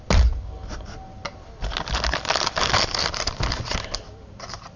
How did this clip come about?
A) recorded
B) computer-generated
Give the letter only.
A